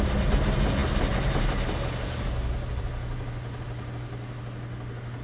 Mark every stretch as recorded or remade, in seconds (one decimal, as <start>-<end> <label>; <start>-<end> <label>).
0.0-5.2 recorded